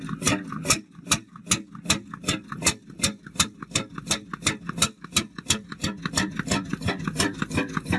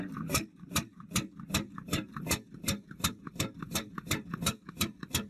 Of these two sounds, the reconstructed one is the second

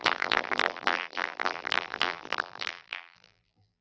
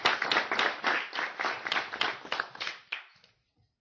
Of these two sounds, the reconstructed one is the first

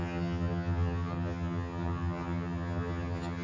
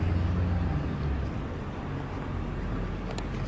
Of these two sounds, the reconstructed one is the first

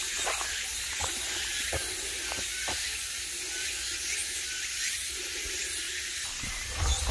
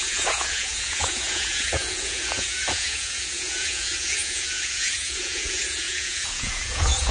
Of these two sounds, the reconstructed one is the second